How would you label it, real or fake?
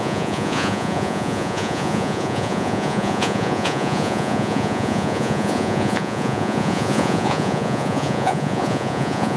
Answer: fake